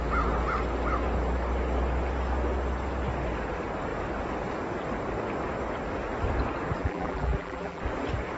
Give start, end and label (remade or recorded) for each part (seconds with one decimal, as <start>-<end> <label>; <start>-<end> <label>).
0.0-6.8 recorded; 6.8-7.8 remade; 7.8-8.4 recorded